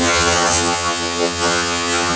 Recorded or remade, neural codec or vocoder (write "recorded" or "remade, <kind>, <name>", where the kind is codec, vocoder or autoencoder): remade, vocoder, HiFi-GAN